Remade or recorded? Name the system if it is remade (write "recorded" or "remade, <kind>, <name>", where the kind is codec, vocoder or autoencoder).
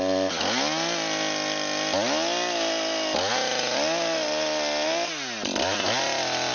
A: recorded